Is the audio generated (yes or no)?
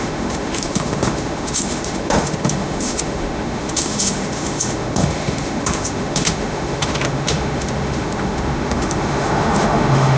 yes